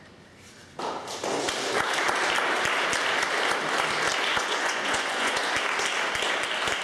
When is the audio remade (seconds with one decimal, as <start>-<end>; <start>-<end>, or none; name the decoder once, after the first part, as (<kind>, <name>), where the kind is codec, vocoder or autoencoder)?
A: 4.3-5.4 (vocoder, Vocos)